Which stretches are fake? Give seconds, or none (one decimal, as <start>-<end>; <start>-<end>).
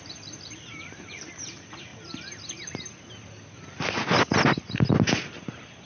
0.0-1.9; 5.4-5.9